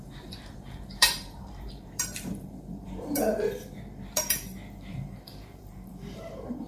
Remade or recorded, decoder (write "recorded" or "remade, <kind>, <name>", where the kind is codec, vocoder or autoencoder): remade, vocoder, BigVGAN v2